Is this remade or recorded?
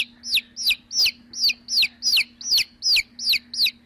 recorded